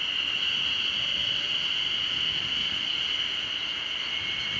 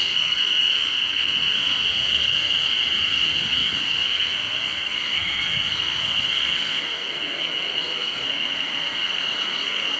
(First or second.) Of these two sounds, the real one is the first